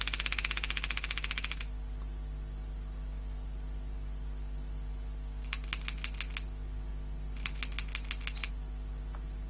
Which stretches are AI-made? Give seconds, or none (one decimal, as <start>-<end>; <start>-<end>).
none